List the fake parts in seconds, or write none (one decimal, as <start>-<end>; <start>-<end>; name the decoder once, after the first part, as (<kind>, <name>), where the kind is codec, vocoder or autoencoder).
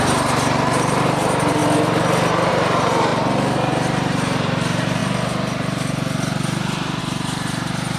0.0-1.6 (vocoder, BigVGAN v2); 2.5-3.1; 3.7-5.0; 7.0-8.0